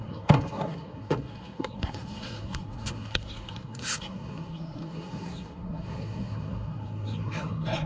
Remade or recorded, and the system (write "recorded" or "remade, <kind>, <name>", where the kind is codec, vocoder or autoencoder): remade, codec, SNAC